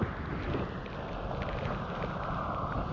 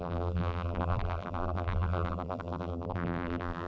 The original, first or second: first